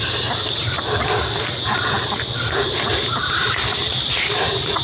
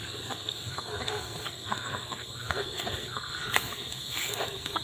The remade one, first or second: second